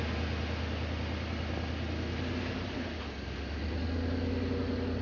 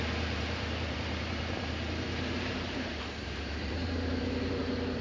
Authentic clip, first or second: first